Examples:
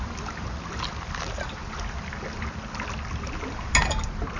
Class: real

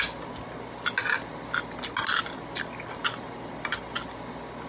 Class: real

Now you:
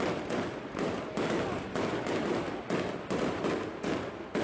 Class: real